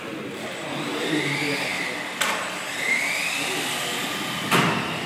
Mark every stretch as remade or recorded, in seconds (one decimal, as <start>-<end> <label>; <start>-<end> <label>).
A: 0.0-1.7 recorded; 1.7-4.2 remade; 4.2-5.1 recorded